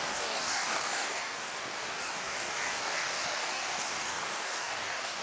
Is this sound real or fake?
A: fake